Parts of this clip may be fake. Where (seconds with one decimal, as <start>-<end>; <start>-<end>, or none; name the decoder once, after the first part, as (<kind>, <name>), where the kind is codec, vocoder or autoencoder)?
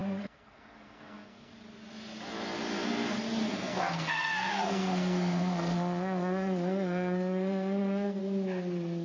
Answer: 0.0-1.5 (codec, SNAC); 3.5-8.2